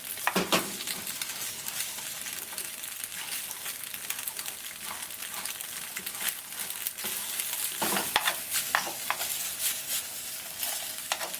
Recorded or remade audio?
recorded